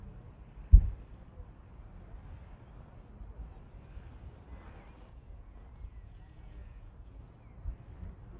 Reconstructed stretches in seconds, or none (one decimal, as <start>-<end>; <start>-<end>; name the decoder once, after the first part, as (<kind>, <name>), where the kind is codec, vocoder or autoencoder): 5.1-7.2 (vocoder, Vocos)